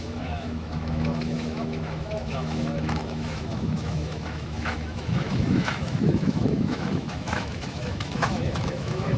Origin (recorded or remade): remade